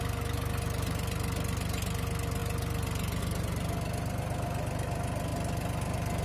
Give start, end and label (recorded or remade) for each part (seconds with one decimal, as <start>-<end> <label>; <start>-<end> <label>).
0.0-6.2 recorded